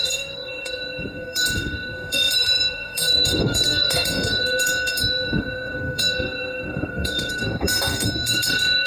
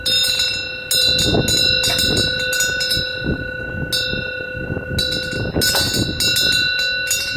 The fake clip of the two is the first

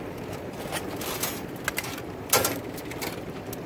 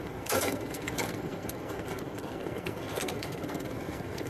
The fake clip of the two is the second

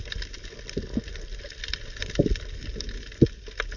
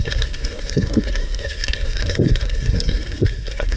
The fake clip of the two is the second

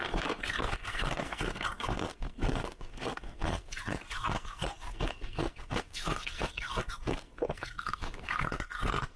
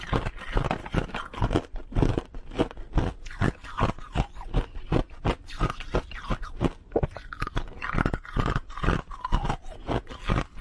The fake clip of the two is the first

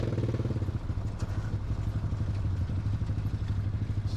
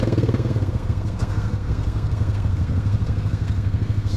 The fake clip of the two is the second